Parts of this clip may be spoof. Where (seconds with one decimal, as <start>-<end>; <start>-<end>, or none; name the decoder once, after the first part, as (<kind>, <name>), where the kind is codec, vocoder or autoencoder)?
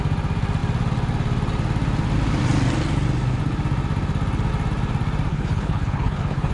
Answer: 5.3-6.5 (codec, HILCodec)